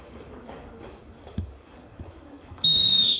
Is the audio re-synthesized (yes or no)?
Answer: yes